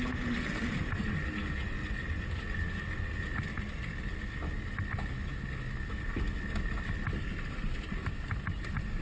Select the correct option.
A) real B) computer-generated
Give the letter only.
A